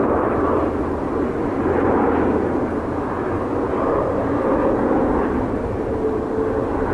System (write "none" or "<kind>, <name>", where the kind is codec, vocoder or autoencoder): none